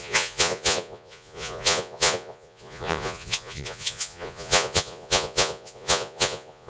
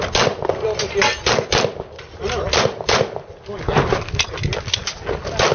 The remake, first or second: first